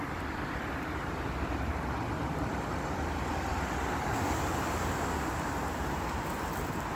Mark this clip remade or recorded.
remade